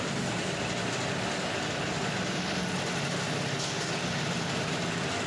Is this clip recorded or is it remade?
recorded